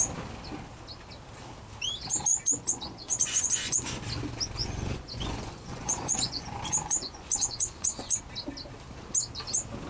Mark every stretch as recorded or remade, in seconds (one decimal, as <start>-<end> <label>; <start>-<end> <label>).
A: 0.0-2.3 recorded; 2.3-4.0 remade; 4.0-4.6 recorded; 4.6-8.2 remade; 8.2-9.9 recorded